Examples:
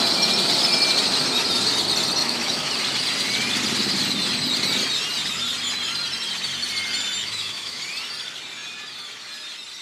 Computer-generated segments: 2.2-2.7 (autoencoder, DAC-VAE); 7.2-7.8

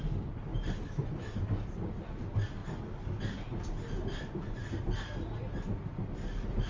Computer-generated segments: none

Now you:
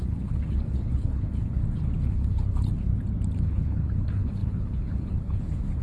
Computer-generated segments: 0.0-1.6 (codec, HILCodec); 2.1-2.9; 3.4-5.8

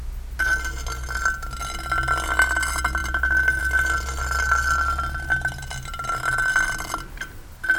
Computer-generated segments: none

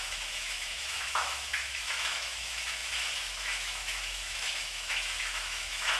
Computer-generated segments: 0.0-6.0 (autoencoder, DAC-VAE)

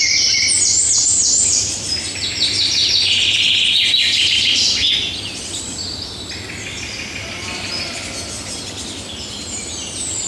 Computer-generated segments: 1.1-4.9 (vocoder, BigVGAN v2)

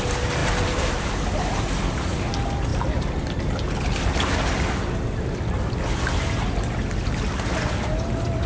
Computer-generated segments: 0.4-1.1 (vocoder, BigVGAN v2); 2.7-4.7